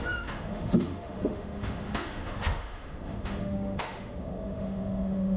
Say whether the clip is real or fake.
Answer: fake